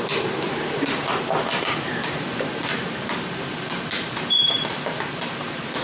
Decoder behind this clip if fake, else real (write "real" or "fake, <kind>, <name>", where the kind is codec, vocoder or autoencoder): fake, vocoder, BigVGAN v2